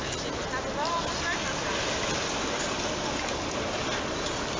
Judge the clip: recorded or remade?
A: recorded